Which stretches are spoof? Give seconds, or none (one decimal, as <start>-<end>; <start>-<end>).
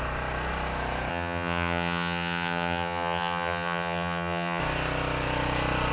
1.1-4.6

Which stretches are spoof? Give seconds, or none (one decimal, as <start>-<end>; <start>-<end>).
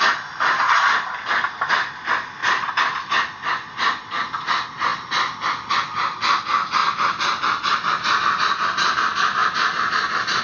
2.4-3.1; 6.8-8.2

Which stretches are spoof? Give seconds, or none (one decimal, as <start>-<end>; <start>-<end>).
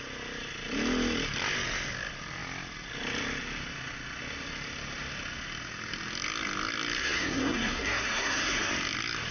7.0-8.7